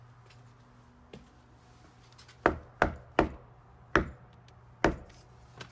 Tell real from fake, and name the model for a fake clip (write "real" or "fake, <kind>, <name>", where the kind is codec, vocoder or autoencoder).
real